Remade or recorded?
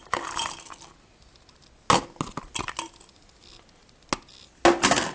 recorded